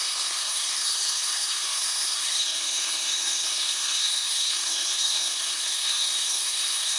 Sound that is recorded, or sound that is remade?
remade